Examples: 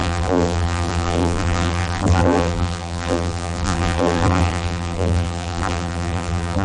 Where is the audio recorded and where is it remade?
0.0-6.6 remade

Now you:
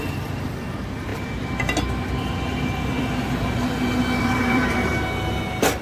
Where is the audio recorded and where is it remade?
0.0-1.1 remade; 1.1-4.2 recorded; 4.2-4.9 remade; 4.9-5.8 recorded

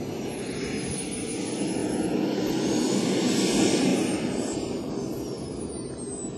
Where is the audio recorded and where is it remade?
0.0-3.9 recorded; 3.9-4.9 remade; 4.9-6.4 recorded